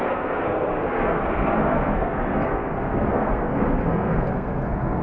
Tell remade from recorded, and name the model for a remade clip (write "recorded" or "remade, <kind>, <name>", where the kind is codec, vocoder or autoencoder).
remade, codec, SNAC